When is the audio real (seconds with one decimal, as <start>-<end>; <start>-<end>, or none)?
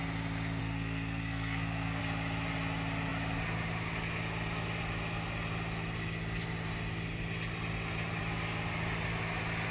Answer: 0.0-0.6; 2.0-9.7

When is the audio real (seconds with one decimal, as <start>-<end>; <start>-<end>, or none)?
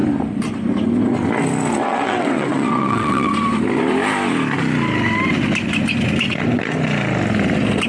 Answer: 0.0-1.8; 3.3-7.9